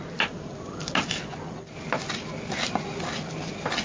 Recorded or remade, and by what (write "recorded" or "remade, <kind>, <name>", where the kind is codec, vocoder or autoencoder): recorded